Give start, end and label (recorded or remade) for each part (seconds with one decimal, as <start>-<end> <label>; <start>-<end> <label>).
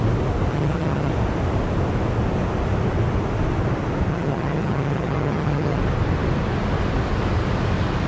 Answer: 0.0-0.5 recorded; 0.5-1.1 remade; 1.1-4.1 recorded; 4.1-5.8 remade; 5.8-8.1 recorded